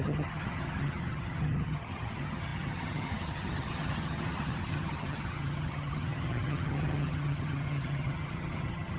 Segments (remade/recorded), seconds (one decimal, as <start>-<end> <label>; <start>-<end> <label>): 0.0-9.0 remade

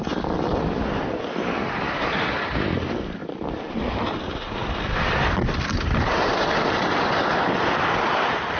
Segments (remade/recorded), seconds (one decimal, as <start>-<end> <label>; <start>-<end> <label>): 0.0-3.2 recorded; 3.2-4.1 remade; 4.1-4.6 recorded; 4.6-7.1 remade; 7.1-8.6 recorded

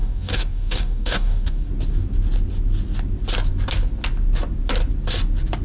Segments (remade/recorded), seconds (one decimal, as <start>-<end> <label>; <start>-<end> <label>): 0.0-1.7 remade; 1.7-5.6 recorded

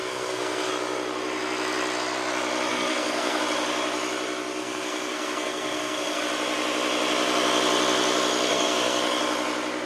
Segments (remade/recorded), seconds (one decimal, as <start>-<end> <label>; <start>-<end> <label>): 0.0-0.7 remade; 0.7-2.7 recorded; 2.7-3.4 remade; 3.4-4.6 recorded; 4.6-6.2 remade; 6.2-8.5 recorded; 8.5-9.2 remade; 9.2-9.9 recorded